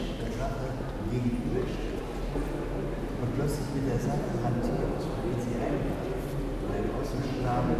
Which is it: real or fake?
real